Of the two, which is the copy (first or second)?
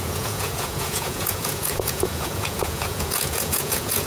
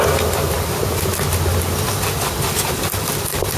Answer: first